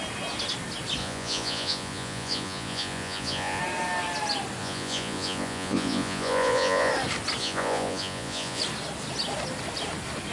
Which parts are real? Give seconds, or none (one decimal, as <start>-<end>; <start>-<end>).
0.0-1.0; 3.6-4.6; 6.9-7.4; 8.6-10.3